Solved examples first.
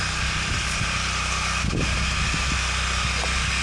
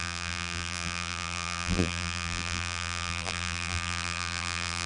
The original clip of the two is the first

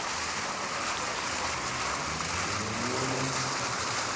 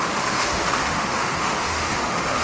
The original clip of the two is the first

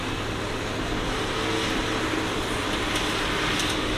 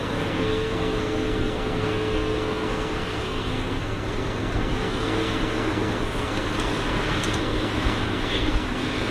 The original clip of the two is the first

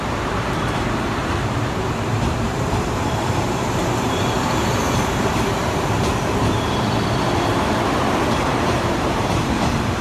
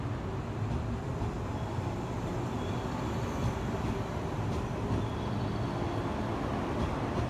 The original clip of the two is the second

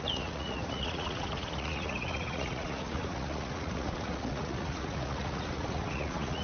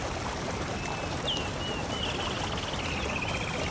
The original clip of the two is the second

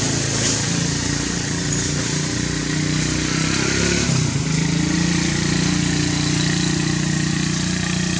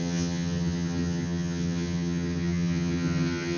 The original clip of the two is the first